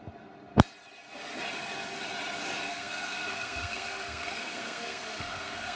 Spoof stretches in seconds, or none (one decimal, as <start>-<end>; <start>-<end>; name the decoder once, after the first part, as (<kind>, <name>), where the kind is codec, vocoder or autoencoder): 2.7-5.8 (codec, SNAC)